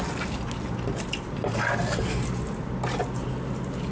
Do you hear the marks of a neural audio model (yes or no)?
no